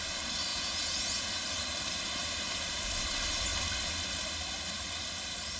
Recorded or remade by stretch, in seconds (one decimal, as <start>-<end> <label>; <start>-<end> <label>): 0.0-0.5 recorded; 0.5-1.3 remade; 1.3-5.6 recorded